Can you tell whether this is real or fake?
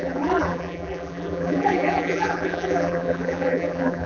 fake